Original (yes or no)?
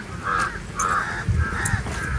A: yes